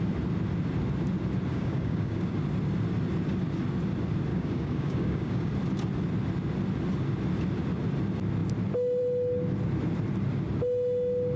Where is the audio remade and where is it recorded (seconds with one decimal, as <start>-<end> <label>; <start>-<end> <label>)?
0.0-1.5 recorded; 1.5-2.3 remade; 2.3-4.3 recorded; 4.3-5.5 remade; 5.5-11.4 recorded